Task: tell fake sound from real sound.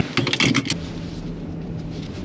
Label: real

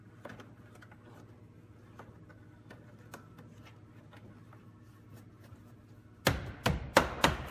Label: real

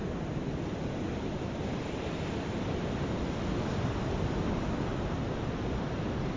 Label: real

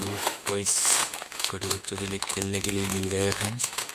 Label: fake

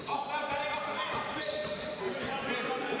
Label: real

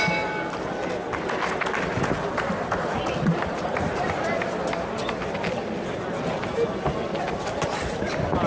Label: real